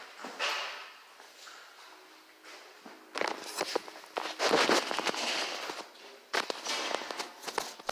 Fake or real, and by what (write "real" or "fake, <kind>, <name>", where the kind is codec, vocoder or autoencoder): real